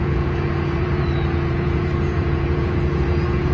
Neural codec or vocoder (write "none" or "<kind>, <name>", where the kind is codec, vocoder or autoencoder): vocoder, Vocos